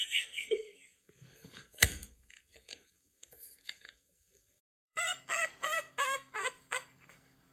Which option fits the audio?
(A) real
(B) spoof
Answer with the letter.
B